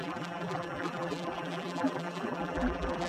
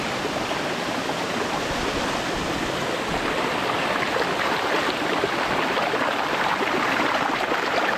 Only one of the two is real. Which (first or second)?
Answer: second